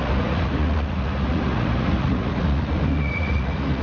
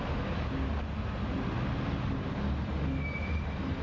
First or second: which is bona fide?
second